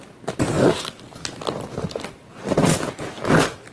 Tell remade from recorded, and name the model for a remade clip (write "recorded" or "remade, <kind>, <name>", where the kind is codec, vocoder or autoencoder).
recorded